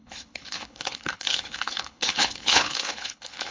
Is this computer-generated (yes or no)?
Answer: yes